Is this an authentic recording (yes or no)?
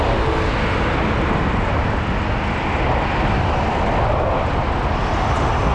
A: yes